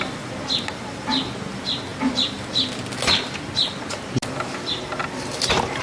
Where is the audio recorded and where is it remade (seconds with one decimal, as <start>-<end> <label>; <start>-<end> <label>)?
0.0-5.8 recorded